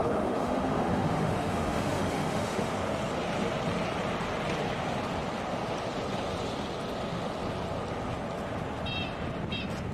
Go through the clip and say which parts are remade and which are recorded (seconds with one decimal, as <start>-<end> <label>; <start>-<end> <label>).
0.0-2.7 remade; 2.7-9.9 recorded